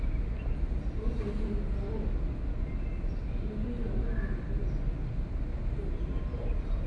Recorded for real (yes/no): yes